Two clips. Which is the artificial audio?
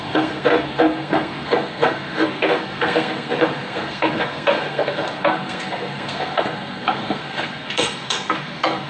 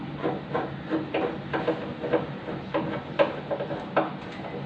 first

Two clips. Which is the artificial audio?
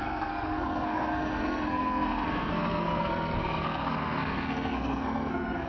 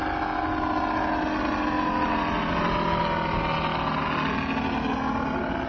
first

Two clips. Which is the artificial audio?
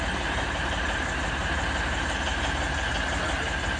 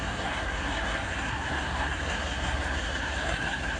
second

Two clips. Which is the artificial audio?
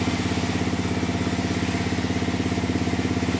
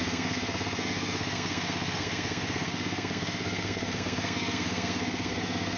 second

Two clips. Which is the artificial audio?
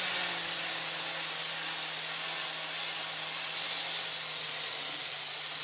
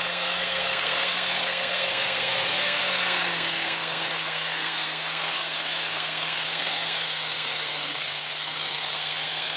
second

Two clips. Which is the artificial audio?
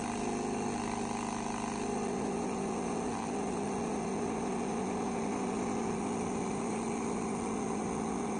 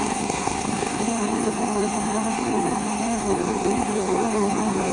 second